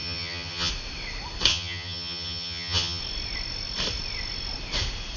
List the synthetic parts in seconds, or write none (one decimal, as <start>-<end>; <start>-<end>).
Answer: 0.0-0.7; 1.5-3.0